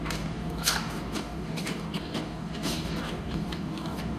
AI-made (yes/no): yes